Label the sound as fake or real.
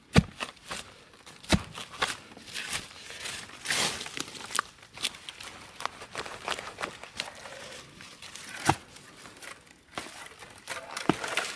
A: real